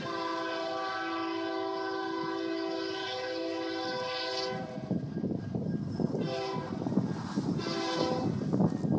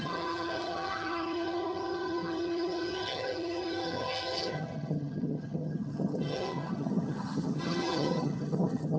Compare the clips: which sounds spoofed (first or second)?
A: second